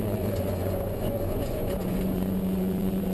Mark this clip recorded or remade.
remade